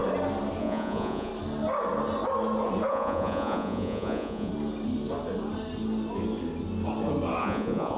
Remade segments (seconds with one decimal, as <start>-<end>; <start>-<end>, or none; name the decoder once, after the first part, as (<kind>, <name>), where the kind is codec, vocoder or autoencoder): 0.6-1.3 (vocoder, Vocos); 2.9-4.5; 7.4-8.0